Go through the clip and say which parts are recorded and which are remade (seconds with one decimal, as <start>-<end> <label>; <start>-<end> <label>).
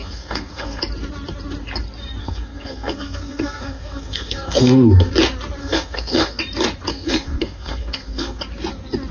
0.0-0.8 remade; 0.8-2.2 recorded; 2.2-5.1 remade; 5.1-5.6 recorded; 5.6-6.4 remade; 6.4-6.9 recorded; 6.9-8.4 remade; 8.4-9.1 recorded